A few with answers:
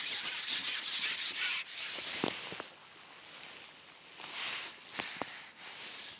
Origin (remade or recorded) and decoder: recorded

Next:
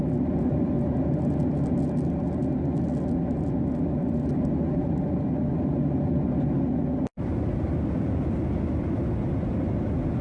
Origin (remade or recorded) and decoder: recorded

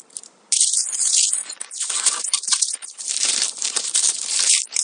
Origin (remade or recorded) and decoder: remade, vocoder, BigVGAN v2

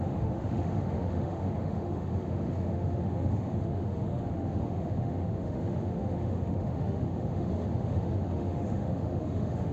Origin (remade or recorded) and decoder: remade, autoencoder, DAC-VAE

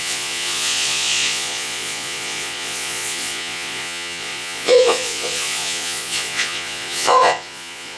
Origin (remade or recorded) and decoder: remade, vocoder, Vocos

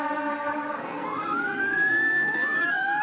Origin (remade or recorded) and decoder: remade, codec, SNAC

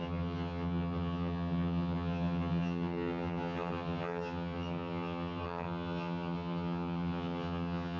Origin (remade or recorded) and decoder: remade, vocoder, HiFi-GAN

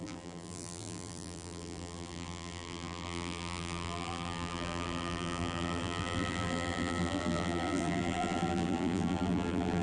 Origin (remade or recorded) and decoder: remade, vocoder, BigVGAN v2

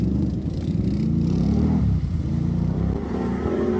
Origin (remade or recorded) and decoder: remade, vocoder, BigVGAN v2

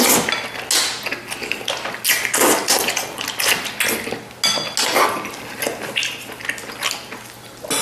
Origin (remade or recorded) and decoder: recorded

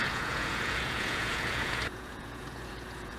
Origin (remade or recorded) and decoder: remade, vocoder, Vocos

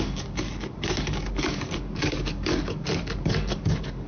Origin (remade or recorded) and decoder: remade, codec, DAC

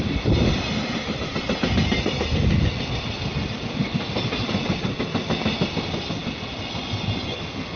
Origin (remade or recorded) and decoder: recorded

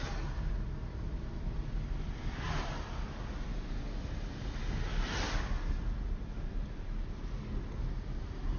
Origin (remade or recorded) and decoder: recorded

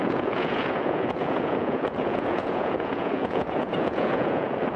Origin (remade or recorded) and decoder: remade, vocoder, Vocos